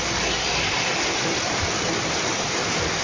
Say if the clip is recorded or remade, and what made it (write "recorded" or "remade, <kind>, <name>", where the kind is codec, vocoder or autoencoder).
recorded